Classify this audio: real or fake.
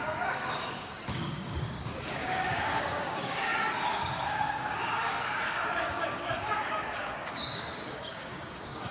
fake